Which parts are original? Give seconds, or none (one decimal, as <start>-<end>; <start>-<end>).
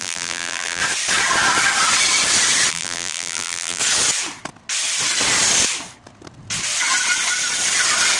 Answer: 0.8-2.7; 3.8-8.2